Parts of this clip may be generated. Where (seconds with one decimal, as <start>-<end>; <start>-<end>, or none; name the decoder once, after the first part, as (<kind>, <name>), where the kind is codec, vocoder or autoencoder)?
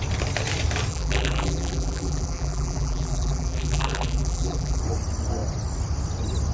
0.9-4.8 (vocoder, BigVGAN v2)